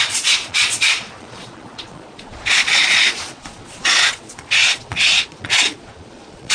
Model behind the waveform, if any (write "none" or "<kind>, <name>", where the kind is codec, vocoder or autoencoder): vocoder, Vocos